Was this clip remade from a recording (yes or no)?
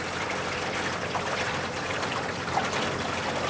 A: no